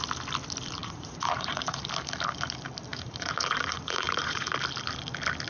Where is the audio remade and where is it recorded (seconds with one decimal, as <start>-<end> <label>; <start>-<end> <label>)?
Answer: 0.0-0.8 recorded; 0.8-1.8 remade; 1.8-2.9 recorded; 2.9-4.5 remade; 4.5-5.5 recorded